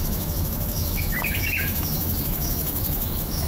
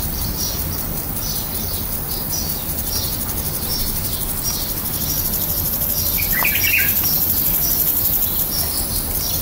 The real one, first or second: second